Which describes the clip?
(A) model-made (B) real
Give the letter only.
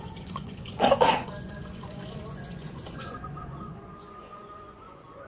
A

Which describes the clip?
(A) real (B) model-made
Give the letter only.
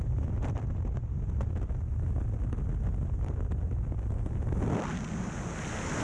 A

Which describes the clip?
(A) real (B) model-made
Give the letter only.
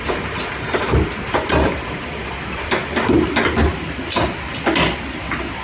A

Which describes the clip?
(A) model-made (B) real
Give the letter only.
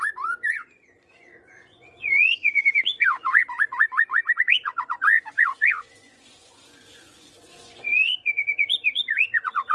A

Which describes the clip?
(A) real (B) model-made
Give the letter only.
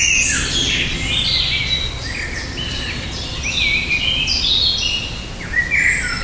A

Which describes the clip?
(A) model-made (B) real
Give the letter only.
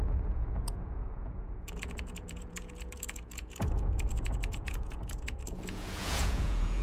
A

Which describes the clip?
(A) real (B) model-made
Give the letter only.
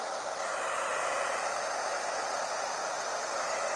A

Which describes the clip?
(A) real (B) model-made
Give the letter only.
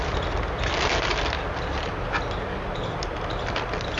A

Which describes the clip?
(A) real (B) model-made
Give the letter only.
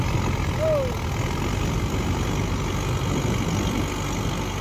A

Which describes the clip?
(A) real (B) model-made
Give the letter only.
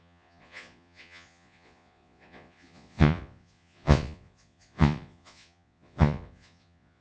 B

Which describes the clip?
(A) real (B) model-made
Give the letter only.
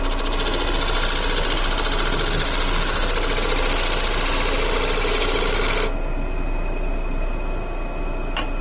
A